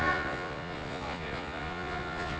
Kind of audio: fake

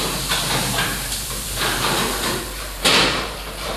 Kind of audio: fake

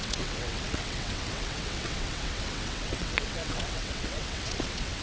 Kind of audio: fake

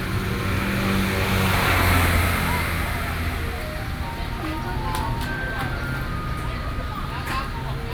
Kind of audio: real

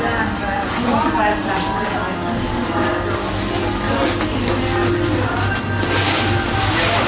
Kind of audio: real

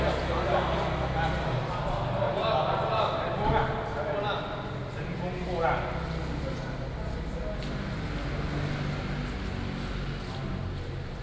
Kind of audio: real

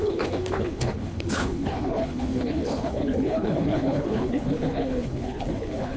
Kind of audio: fake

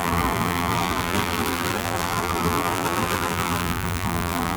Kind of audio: fake